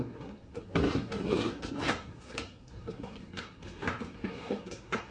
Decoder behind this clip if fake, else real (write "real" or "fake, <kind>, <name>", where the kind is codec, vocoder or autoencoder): fake, codec, SNAC